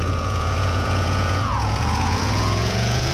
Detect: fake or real fake